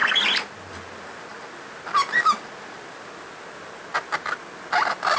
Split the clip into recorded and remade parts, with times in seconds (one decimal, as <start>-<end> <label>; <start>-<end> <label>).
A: 0.0-5.2 recorded